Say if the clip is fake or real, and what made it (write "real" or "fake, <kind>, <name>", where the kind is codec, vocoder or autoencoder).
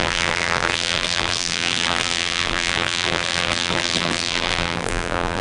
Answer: fake, vocoder, BigVGAN v2